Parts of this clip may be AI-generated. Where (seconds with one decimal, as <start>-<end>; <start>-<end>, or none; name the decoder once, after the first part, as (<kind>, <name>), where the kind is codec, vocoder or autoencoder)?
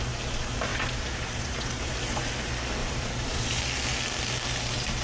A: 0.7-2.3 (vocoder, BigVGAN v2); 2.8-3.6